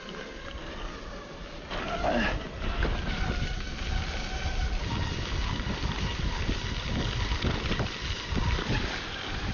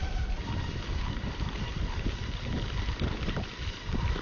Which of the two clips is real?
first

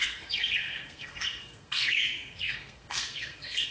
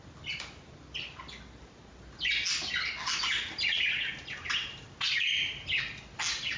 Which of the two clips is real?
second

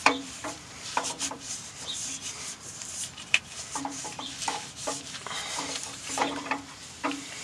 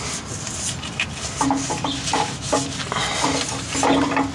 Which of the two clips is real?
second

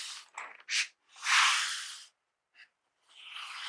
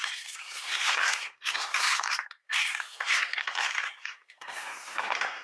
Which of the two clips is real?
first